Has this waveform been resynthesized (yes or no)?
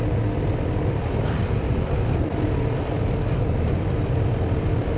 yes